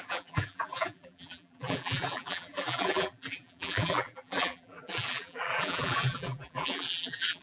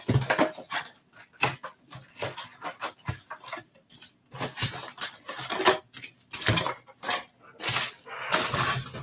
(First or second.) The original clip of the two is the second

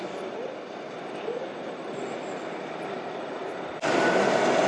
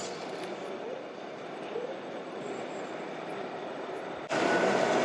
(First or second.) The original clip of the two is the first